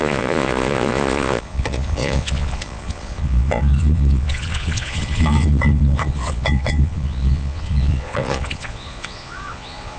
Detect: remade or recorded remade